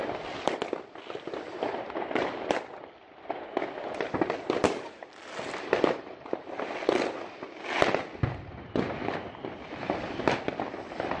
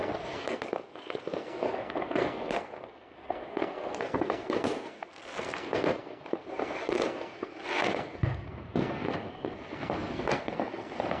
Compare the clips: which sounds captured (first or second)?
first